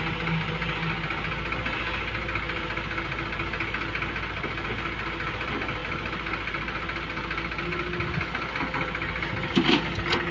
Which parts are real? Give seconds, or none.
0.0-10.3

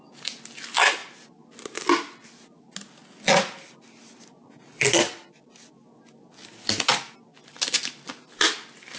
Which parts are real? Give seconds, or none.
0.0-9.0

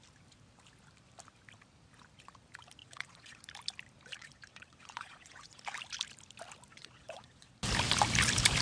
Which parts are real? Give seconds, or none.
0.0-2.8; 3.4-4.1; 5.6-6.7; 7.5-8.6

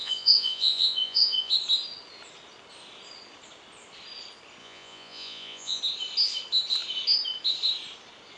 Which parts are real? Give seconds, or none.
1.5-4.6; 5.8-8.4

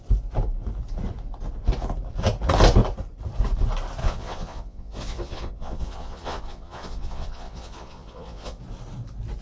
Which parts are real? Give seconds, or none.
0.0-4.0; 8.6-9.4

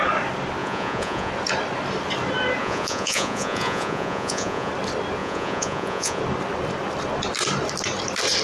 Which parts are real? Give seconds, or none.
0.0-0.6; 1.3-2.6; 4.7-5.2; 6.2-8.4